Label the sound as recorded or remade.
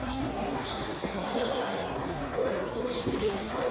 remade